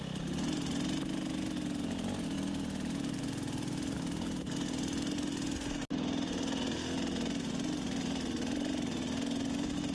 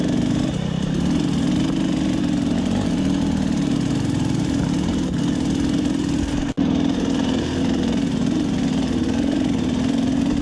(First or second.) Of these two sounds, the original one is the first